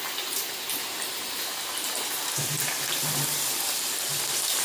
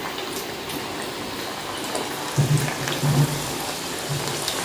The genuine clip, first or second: second